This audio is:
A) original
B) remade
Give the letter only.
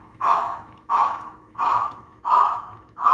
B